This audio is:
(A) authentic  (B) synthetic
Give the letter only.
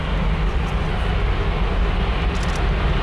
A